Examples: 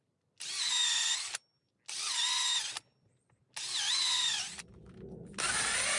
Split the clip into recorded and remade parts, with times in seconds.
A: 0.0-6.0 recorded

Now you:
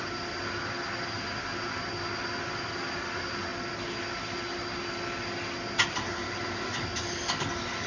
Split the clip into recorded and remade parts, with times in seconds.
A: 0.0-7.9 recorded

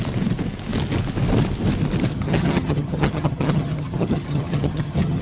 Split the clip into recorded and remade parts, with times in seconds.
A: 0.0-2.1 recorded; 2.1-5.2 remade

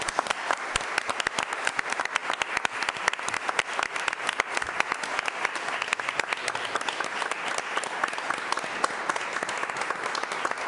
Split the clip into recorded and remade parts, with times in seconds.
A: 0.0-10.7 recorded